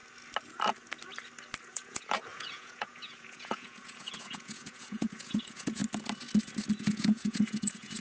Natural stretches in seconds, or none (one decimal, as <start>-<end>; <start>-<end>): 0.0-1.6; 5.8-6.8